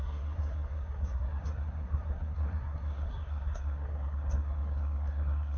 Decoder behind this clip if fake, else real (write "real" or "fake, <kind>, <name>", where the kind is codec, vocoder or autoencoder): fake, codec, SNAC